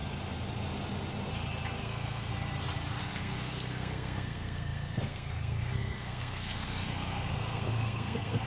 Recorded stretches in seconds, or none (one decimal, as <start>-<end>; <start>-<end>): 0.0-1.8; 2.3-3.0